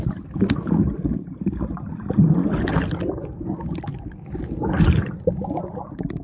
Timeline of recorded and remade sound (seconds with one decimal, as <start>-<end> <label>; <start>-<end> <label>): 0.0-6.2 recorded